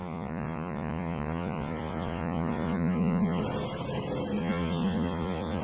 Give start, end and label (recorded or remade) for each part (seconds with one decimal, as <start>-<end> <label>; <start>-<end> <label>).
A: 0.0-3.4 remade; 3.4-4.4 recorded; 4.4-5.6 remade